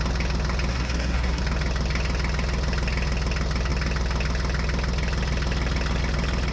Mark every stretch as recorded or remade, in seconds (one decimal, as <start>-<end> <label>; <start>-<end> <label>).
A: 0.0-0.7 recorded; 0.7-1.4 remade; 1.4-6.5 recorded